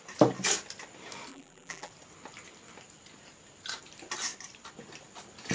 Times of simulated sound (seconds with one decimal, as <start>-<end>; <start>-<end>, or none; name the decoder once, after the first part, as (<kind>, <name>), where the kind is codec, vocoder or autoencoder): 1.3-1.9 (vocoder, BigVGAN v2)